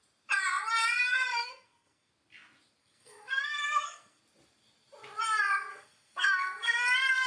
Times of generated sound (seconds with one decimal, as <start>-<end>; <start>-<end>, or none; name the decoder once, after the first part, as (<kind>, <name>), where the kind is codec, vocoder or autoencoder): 1.1-2.1 (codec, SNAC); 2.8-4.2; 5.7-7.3